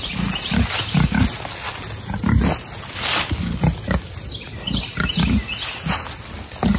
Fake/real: real